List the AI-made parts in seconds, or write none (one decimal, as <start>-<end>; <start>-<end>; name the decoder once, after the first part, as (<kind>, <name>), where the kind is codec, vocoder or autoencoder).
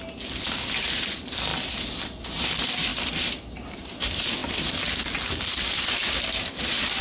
2.9-3.9 (vocoder, BigVGAN v2); 4.4-6.2